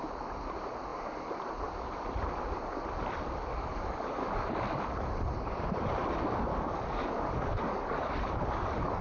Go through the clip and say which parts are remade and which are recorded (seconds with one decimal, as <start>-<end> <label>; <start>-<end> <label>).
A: 0.0-3.5 recorded; 3.5-4.3 remade; 4.3-6.5 recorded; 6.5-9.0 remade